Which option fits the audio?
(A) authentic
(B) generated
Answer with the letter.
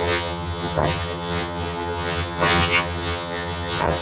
B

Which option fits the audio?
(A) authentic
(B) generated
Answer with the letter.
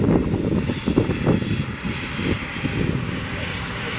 A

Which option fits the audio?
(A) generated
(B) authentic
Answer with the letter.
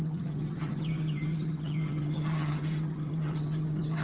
A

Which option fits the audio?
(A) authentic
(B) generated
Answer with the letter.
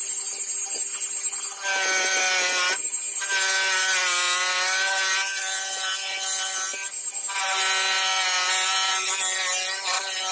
A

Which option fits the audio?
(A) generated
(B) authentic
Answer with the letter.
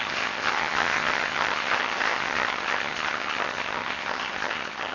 A